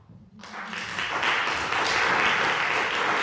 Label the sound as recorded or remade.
recorded